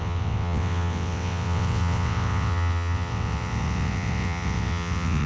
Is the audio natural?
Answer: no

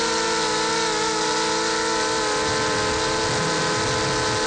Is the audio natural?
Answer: yes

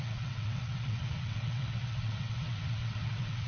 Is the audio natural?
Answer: no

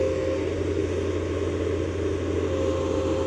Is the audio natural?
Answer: yes